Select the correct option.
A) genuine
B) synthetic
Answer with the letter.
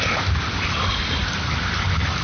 A